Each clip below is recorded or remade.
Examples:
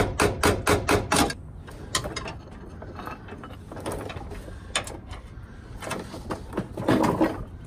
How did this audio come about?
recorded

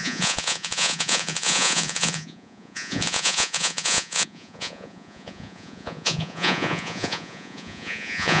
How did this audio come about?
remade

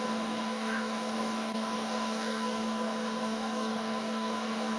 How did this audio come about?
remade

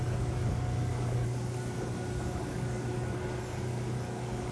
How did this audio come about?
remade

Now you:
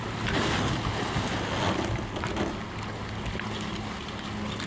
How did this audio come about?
recorded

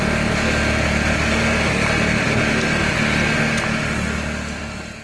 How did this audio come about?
recorded